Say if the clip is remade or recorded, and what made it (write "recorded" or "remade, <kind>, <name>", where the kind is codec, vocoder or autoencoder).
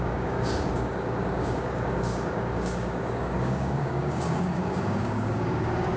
remade, codec, DAC